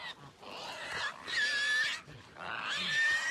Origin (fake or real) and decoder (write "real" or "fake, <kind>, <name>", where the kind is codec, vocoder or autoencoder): real